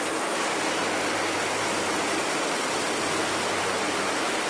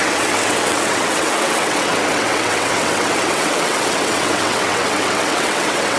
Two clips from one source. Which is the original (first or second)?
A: first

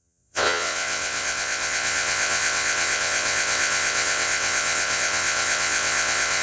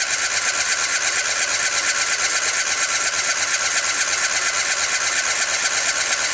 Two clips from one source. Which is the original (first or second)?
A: second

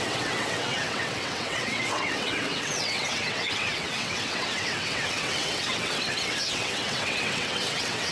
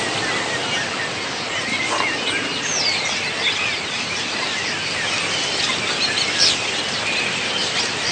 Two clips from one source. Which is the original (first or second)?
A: second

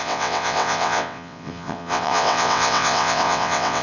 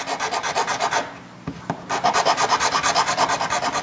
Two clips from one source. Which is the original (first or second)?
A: second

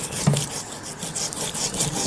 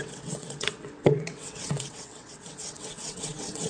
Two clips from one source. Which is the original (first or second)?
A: first